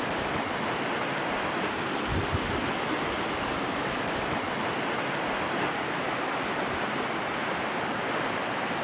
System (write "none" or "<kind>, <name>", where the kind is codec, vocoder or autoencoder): none